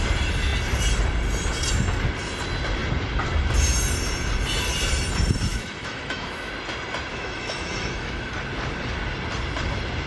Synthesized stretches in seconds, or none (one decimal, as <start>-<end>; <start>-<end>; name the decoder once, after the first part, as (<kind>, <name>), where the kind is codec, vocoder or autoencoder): 5.5-6.5 (autoencoder, DAC-VAE); 7.1-8.3